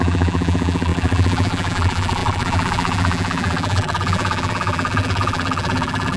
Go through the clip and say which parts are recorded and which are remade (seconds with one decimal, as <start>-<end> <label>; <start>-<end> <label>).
0.0-6.2 remade